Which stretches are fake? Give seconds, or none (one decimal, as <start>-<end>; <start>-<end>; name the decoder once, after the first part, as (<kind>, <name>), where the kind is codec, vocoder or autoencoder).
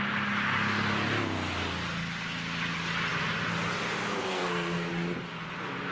4.2-4.9 (codec, SNAC)